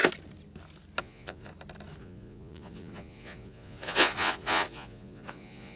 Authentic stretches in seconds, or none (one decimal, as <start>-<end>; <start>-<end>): 0.0-1.0; 1.5-2.0